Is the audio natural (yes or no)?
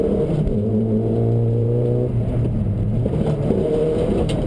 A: no